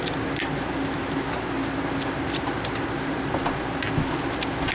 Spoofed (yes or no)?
no